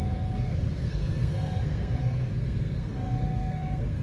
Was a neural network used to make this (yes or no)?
yes